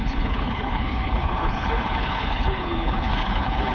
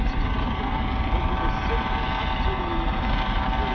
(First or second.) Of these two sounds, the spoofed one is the first